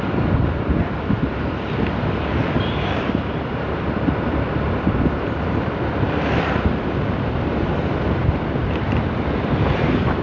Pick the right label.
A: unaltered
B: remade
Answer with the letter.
B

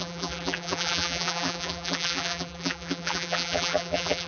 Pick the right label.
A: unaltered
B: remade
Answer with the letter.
B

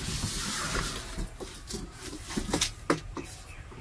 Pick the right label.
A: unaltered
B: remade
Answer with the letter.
B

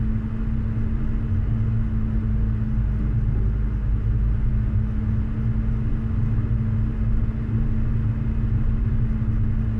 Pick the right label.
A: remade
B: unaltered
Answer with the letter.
B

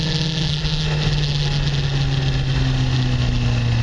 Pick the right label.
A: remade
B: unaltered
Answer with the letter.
B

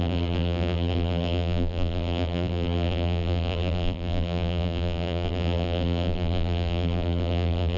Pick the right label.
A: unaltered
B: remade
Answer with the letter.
B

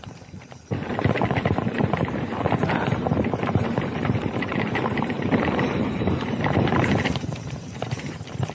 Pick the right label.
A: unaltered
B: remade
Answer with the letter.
B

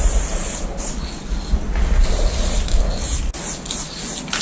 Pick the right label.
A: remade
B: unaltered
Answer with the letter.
B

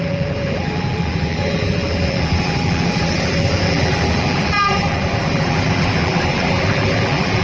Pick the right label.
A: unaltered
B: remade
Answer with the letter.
B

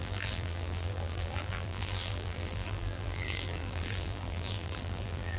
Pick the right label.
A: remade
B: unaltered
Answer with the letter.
A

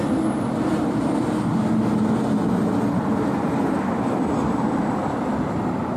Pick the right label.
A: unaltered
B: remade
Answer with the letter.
A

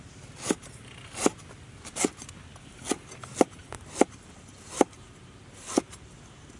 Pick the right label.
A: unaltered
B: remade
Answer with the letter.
A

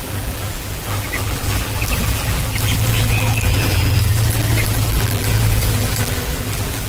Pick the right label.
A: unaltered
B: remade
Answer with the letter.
B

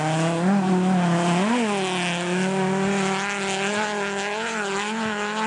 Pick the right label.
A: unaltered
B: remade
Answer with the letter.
A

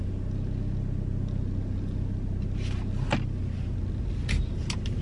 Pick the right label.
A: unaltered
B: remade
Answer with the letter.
A